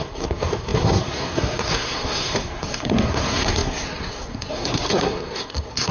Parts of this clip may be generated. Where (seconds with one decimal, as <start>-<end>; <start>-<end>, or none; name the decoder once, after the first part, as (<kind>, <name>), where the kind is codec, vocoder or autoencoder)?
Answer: 0.0-5.9 (codec, SNAC)